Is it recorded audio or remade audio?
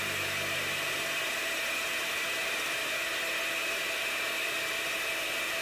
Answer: recorded